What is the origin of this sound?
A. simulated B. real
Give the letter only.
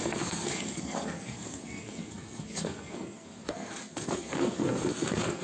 A